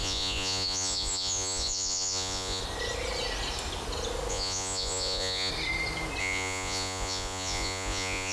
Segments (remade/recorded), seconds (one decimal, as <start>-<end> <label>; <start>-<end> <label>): 0.0-2.6 remade; 2.6-4.3 recorded; 4.3-5.5 remade; 5.5-6.2 recorded; 6.2-8.3 remade